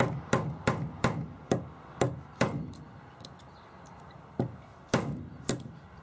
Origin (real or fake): real